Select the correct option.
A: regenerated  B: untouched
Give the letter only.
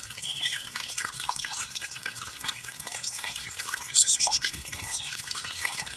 A